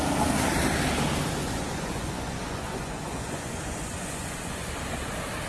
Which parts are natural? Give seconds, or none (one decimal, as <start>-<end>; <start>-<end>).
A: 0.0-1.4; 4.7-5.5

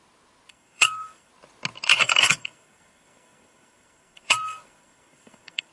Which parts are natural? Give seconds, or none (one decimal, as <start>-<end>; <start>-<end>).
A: 0.0-0.5; 1.3-2.0

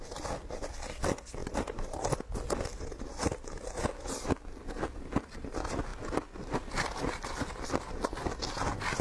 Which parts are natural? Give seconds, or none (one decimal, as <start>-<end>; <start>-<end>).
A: 0.0-1.4; 2.1-9.0

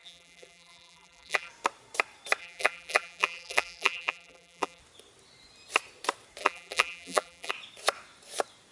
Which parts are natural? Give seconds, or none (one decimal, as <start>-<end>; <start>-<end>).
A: 1.5-2.4; 4.8-6.4; 7.5-8.7

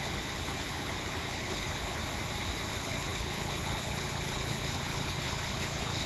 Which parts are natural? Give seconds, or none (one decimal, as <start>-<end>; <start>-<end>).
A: 2.0-2.7

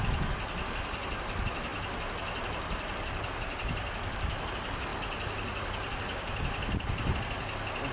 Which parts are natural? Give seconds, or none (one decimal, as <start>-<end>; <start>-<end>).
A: 0.0-7.9

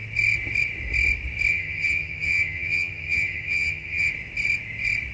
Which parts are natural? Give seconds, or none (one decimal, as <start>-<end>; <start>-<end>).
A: 0.0-1.5; 4.1-5.1